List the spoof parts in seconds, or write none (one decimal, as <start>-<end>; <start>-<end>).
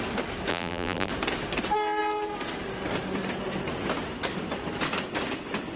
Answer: 0.5-1.1